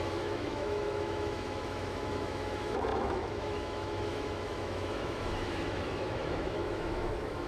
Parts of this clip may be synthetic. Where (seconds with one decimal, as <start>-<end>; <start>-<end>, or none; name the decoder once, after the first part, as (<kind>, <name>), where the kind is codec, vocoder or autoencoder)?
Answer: 0.0-7.5 (autoencoder, DAC-VAE)